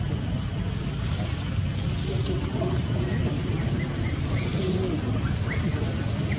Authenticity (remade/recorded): recorded